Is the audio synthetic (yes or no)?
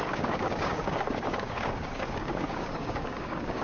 yes